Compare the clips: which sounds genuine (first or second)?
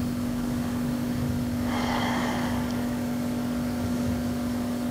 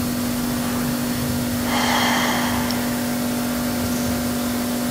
second